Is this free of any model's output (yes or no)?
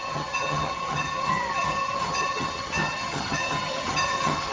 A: no